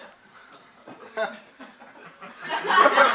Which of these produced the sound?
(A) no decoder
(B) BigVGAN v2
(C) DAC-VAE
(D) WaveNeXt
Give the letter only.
B